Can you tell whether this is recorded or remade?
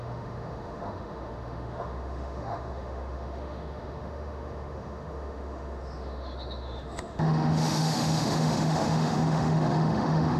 remade